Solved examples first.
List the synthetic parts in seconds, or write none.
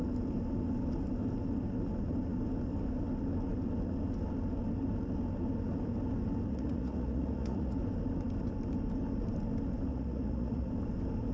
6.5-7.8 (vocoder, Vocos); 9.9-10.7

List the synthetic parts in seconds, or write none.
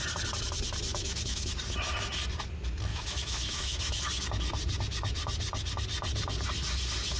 0.9-1.5 (autoencoder, DAC-VAE); 2.9-4.0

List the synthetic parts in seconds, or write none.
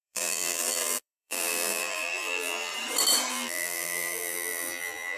0.0-2.7 (vocoder, BigVGAN v2); 3.3-5.2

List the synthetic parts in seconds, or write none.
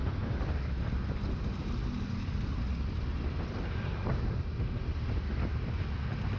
none